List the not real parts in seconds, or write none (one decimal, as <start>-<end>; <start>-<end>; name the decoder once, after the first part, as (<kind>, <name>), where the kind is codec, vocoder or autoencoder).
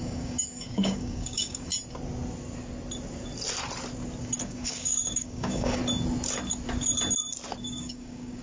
0.0-1.7 (codec, DAC); 4.2-5.8; 7.6-8.4